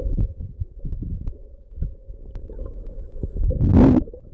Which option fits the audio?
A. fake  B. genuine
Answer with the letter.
B